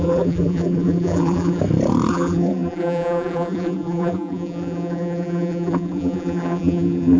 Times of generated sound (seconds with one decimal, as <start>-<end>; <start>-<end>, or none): 0.0-1.6; 2.1-7.2